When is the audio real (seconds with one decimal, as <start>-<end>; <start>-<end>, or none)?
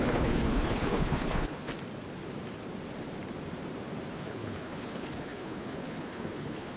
1.7-4.1